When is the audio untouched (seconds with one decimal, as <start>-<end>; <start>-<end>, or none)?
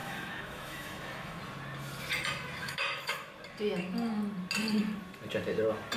1.4-2.6; 3.3-6.0